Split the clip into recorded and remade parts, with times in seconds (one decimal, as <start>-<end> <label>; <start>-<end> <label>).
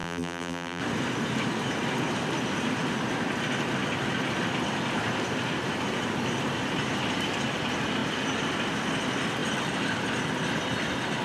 0.0-0.8 remade; 0.8-11.2 recorded